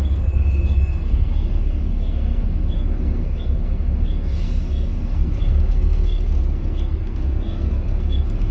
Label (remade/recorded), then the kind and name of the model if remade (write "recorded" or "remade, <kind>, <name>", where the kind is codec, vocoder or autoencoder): remade, codec, SNAC